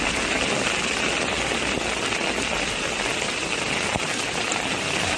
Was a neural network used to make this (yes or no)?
no